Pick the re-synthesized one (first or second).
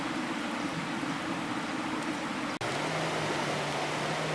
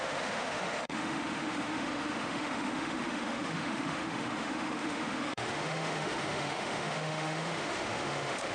second